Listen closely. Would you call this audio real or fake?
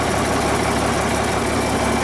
real